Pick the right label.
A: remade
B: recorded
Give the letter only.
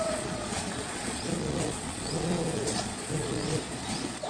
A